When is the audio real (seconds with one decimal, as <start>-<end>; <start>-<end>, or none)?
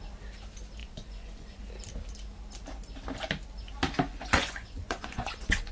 0.0-0.8; 1.7-4.1